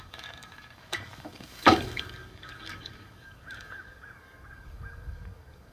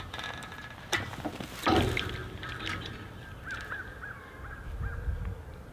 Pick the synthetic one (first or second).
first